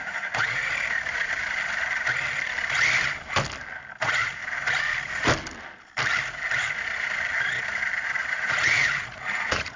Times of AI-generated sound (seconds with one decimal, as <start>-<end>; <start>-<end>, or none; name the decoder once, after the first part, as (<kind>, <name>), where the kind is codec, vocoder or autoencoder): 0.0-0.6 (vocoder, Vocos); 4.0-4.4; 8.3-9.8